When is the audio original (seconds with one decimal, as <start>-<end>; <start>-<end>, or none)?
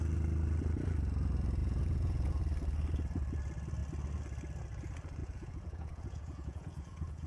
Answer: 0.0-1.6; 2.4-5.2